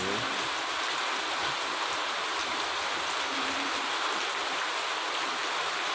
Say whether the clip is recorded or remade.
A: recorded